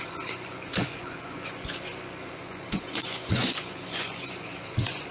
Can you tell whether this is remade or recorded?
remade